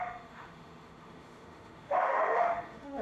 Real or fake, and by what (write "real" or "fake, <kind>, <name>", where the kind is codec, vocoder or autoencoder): fake, autoencoder, DAC-VAE